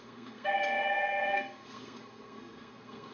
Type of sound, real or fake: fake